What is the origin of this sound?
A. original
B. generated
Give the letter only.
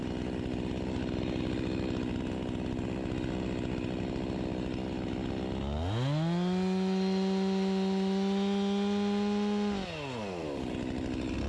A